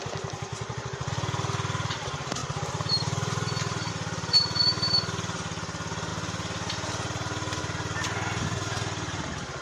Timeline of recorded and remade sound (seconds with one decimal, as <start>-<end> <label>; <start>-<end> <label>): 0.0-0.5 recorded; 0.5-1.1 remade; 1.1-2.4 recorded; 2.4-3.9 remade; 3.9-9.6 recorded

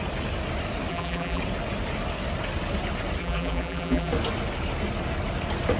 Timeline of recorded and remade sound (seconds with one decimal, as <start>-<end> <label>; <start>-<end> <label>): 0.0-0.9 recorded; 0.9-1.4 remade; 1.4-3.2 recorded; 3.2-4.1 remade; 4.1-5.8 recorded

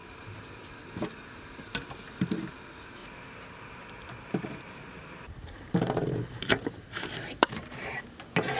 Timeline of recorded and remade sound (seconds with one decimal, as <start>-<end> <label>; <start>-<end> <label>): 0.0-0.6 remade; 0.6-3.0 recorded; 3.0-8.0 remade; 8.0-8.6 recorded

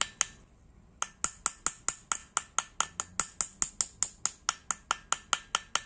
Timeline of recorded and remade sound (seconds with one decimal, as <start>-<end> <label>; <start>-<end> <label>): 0.0-5.9 recorded